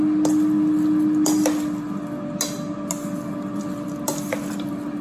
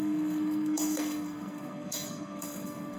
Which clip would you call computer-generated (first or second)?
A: second